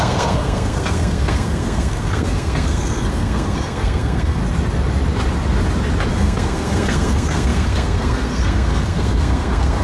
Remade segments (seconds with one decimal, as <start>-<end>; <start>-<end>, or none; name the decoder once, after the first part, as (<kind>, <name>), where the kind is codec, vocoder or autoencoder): 0.0-4.4 (codec, SNAC); 6.1-9.8

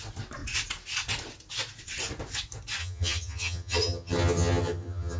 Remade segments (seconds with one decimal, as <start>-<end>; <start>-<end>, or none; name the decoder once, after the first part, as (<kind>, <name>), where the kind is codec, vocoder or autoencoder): 2.8-5.2 (vocoder, HiFi-GAN)

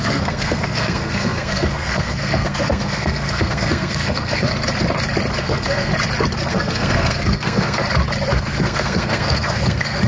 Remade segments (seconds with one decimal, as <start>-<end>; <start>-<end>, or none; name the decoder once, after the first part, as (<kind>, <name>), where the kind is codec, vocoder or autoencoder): 0.0-4.5 (codec, SNAC); 5.4-5.9; 6.5-7.8; 8.3-10.1

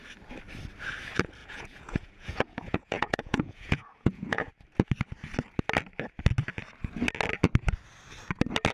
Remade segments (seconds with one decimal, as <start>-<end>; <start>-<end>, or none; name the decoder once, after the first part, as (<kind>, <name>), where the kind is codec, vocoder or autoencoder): 1.4-4.5 (vocoder, Vocos)